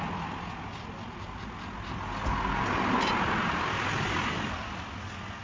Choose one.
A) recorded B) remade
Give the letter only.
A